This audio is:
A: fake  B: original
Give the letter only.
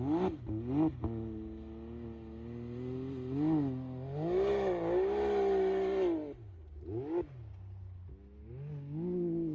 B